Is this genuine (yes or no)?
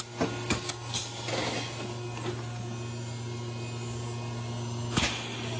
yes